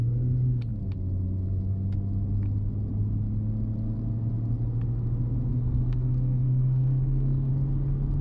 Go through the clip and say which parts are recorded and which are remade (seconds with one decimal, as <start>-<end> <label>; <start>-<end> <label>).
0.0-5.5 recorded; 5.5-7.5 remade; 7.5-8.2 recorded